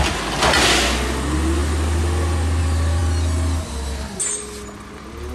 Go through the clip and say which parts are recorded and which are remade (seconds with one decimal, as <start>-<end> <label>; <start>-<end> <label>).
0.0-5.3 recorded